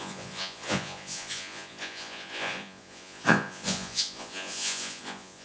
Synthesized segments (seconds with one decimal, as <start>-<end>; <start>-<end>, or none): 0.0-5.4